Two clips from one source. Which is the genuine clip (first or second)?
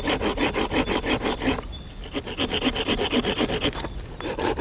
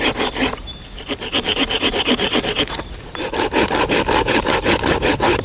first